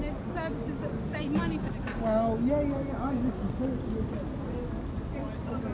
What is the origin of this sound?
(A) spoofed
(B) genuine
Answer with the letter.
B